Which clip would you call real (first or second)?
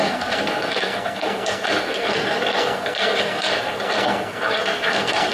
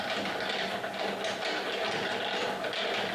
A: second